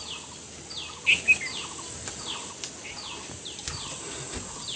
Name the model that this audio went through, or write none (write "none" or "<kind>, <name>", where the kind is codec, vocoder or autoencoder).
none